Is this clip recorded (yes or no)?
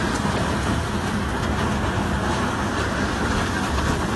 yes